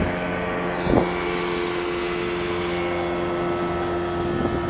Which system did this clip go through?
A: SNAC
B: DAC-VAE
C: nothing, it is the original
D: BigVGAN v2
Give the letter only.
C